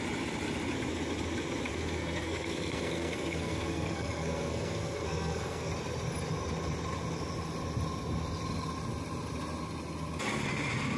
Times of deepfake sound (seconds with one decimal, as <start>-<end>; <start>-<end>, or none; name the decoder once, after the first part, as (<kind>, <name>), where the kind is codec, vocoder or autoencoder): 1.7-5.7 (codec, SNAC)

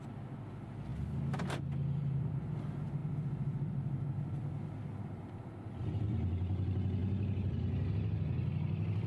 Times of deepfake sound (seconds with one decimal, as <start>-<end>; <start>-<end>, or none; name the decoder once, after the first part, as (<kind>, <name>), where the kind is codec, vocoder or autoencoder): none

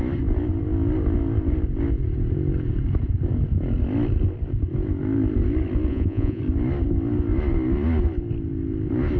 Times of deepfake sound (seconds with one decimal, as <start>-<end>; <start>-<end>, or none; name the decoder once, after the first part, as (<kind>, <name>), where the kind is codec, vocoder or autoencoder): 5.9-6.4 (vocoder, Vocos)

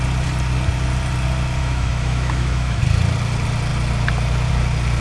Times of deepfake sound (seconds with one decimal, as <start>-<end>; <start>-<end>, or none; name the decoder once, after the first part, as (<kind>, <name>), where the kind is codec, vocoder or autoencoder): 1.6-2.8 (autoencoder, DAC-VAE)

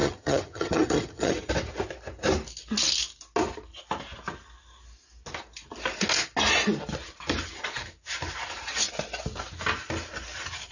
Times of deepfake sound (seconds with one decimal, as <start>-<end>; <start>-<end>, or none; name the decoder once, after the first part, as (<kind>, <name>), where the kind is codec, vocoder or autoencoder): 0.0-1.5 (vocoder, HiFi-GAN)

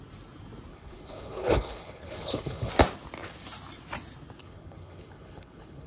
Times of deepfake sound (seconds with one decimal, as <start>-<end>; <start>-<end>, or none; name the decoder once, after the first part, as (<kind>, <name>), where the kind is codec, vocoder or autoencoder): 0.7-2.7 (codec, HILCodec); 4.4-5.9

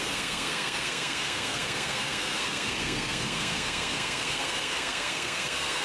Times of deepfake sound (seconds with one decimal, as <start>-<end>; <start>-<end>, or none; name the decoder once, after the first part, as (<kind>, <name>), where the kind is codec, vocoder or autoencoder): 0.0-5.8 (codec, SNAC)